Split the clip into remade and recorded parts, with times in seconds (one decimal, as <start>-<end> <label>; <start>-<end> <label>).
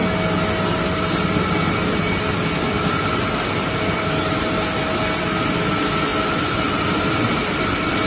0.0-8.1 recorded